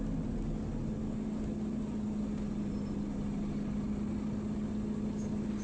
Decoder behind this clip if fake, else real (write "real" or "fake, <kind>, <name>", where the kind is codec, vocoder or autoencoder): real